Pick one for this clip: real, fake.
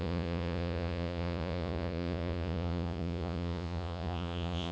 fake